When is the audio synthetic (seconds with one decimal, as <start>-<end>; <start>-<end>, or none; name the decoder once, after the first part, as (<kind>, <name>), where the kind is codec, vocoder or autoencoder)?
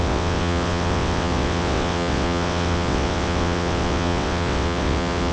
0.0-5.3 (vocoder, WaveNeXt)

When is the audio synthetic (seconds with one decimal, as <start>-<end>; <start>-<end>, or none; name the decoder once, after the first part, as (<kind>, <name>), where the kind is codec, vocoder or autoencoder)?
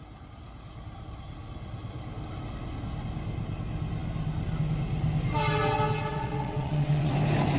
6.1-7.1 (vocoder, WaveNeXt)